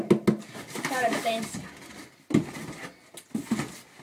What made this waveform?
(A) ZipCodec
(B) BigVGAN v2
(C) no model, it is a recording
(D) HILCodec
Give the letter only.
C